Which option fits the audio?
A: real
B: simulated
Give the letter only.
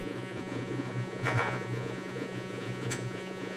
B